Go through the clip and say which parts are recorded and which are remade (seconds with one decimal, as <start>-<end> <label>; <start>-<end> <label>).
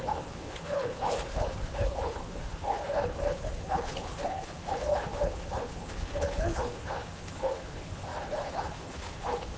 0.0-9.6 remade